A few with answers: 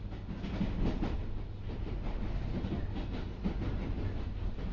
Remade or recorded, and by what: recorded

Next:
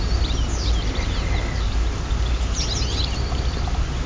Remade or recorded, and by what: recorded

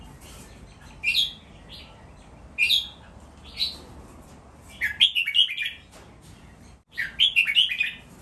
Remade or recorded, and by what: recorded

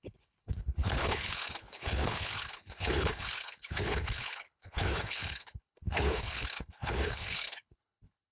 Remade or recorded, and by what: remade, codec, HILCodec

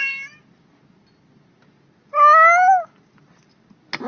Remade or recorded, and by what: recorded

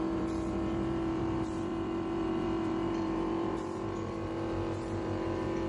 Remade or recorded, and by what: remade, vocoder, BigVGAN v2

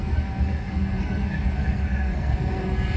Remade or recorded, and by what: remade, codec, SNAC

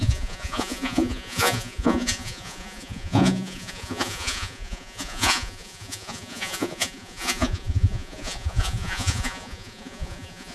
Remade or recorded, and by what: remade, vocoder, Vocos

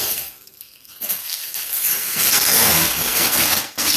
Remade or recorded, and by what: remade, codec, SNAC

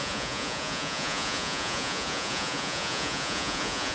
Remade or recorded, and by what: remade, vocoder, Vocos